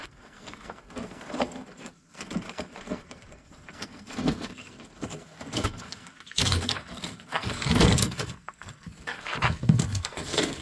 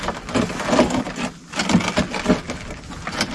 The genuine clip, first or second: second